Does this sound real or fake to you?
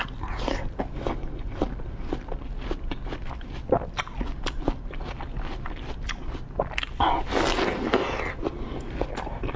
real